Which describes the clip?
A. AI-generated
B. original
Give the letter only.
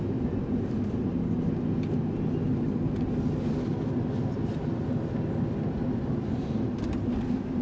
B